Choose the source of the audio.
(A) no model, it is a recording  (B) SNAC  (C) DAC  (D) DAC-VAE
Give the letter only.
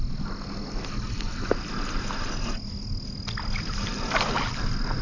A